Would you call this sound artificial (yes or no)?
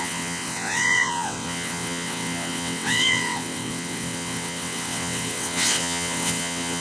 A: yes